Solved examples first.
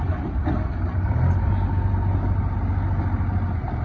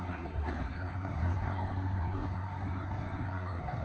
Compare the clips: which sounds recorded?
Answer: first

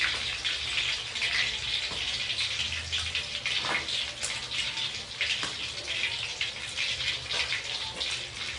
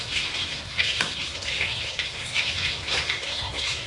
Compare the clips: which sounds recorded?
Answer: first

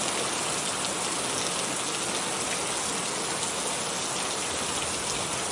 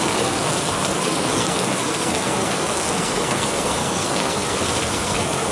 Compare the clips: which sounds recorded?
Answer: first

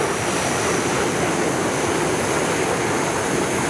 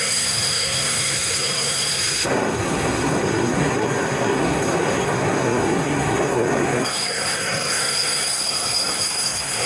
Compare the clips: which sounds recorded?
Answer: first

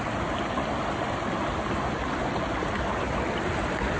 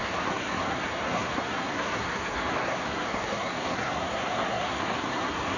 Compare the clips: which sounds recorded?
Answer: first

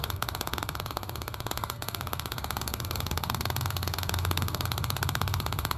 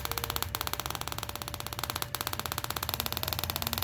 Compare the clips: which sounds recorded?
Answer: second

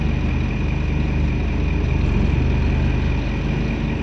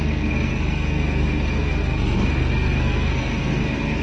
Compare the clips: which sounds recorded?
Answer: first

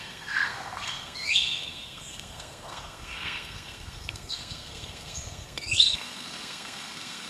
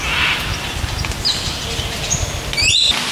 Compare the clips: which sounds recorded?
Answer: second